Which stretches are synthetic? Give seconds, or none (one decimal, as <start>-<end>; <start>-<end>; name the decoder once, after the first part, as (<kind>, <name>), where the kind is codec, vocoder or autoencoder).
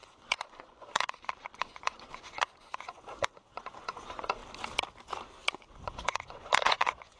0.0-4.4 (vocoder, Vocos); 5.5-7.2